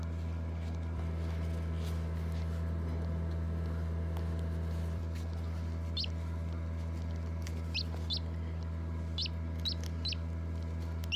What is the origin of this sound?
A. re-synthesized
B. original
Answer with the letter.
B